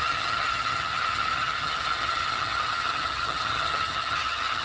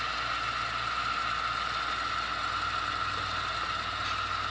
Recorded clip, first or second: second